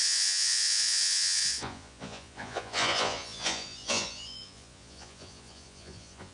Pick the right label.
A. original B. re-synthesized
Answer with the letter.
B